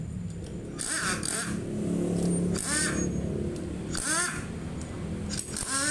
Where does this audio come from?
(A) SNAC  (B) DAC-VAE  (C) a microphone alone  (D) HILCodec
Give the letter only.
C